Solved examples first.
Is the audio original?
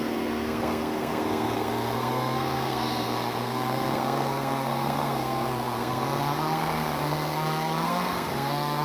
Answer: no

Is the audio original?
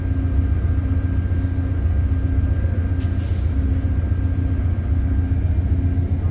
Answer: yes